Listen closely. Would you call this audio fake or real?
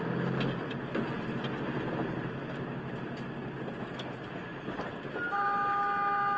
real